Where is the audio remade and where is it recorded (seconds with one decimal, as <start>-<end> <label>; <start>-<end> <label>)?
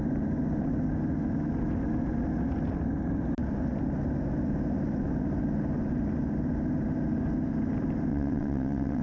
0.0-8.1 recorded; 8.1-9.0 remade